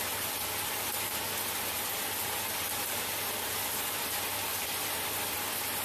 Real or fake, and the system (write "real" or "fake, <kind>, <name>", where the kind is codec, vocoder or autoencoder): real